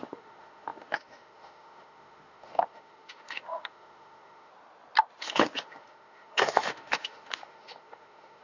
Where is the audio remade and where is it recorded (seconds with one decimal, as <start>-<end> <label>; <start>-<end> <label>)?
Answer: 0.0-4.5 remade; 4.5-5.2 recorded; 5.2-8.4 remade